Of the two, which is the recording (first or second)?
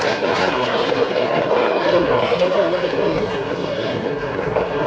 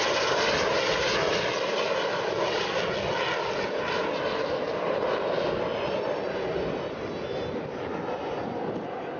second